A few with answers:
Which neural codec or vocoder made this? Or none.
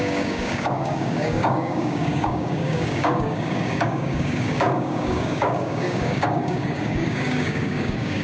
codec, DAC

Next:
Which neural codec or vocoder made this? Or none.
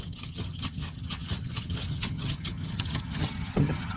vocoder, HiFi-GAN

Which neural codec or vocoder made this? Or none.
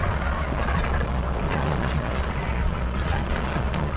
vocoder, Vocos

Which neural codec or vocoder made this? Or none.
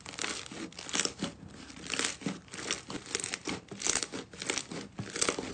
none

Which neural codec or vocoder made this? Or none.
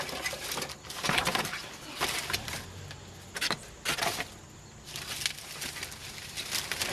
none